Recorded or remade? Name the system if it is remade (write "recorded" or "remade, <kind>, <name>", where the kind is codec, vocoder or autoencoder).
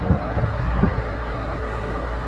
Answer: remade, codec, SNAC